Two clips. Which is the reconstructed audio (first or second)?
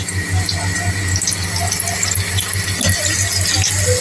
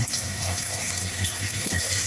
second